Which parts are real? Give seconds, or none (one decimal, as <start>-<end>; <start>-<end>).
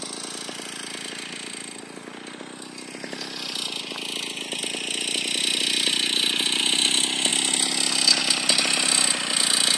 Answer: 0.0-9.8